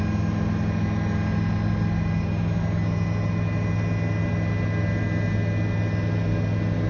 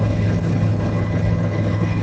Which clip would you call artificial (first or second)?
second